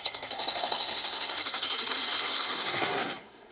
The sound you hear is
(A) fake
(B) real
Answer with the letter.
A